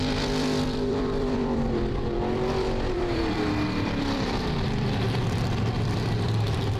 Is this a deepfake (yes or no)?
yes